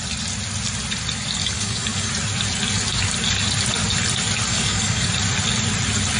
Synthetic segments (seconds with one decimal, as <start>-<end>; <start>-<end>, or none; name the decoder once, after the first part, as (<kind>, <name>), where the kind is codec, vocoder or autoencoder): 1.4-2.1 (codec, DAC); 4.5-5.1